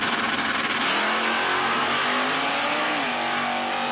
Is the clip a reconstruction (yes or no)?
no